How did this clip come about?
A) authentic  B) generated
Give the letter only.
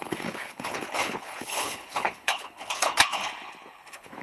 B